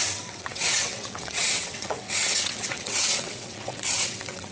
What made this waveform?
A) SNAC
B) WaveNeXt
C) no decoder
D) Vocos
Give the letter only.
B